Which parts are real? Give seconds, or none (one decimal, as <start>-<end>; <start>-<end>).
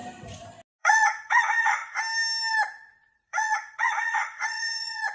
0.0-0.8; 1.8-3.0